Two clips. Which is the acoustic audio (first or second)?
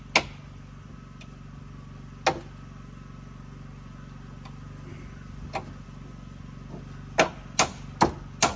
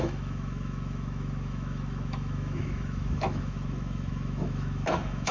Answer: first